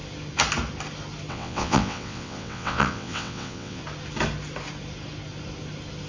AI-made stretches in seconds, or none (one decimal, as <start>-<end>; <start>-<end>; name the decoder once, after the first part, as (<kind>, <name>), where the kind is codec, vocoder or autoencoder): 1.3-3.8 (vocoder, WaveNeXt)